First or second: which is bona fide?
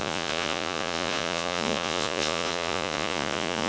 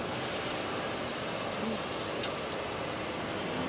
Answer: second